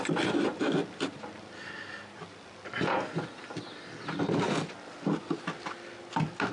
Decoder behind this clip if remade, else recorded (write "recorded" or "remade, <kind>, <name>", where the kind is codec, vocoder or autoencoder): recorded